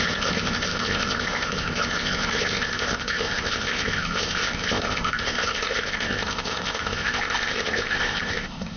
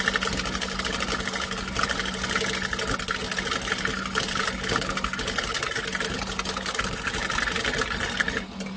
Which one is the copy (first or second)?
first